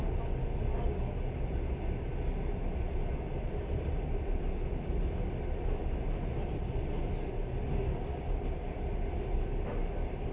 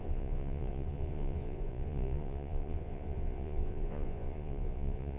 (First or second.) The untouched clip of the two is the first